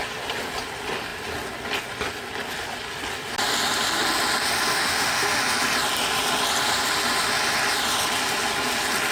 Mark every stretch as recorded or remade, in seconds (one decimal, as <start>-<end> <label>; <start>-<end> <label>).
0.0-4.7 recorded; 4.7-5.4 remade; 5.4-9.1 recorded